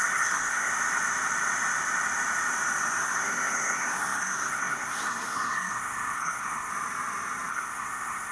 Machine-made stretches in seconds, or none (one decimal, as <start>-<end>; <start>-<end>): 0.0-0.7; 3.0-6.7; 7.5-8.3